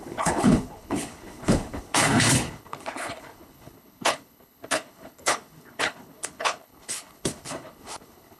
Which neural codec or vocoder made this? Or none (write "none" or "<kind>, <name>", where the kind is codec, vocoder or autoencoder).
codec, HILCodec